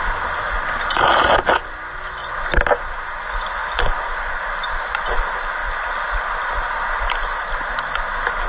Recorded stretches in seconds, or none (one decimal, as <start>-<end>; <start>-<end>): 0.0-8.5